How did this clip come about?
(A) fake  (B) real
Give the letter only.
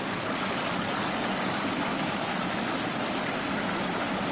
B